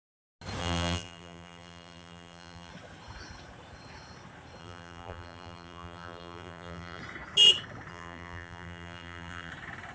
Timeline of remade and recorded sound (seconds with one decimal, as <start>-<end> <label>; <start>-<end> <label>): 0.0-0.6 recorded; 0.6-2.7 remade; 2.7-4.6 recorded; 4.6-7.0 remade; 7.0-7.9 recorded; 7.9-9.5 remade; 9.5-9.9 recorded